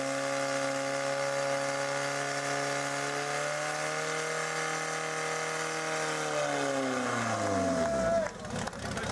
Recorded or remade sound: recorded